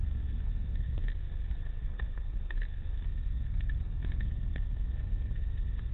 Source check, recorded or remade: remade